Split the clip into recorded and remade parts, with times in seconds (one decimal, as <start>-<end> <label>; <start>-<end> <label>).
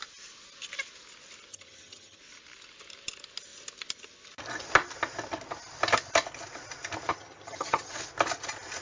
0.0-1.5 recorded; 1.5-2.2 remade; 2.2-7.1 recorded; 7.1-7.9 remade; 7.9-8.8 recorded